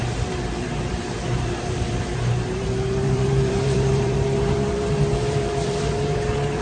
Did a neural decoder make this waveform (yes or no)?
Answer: yes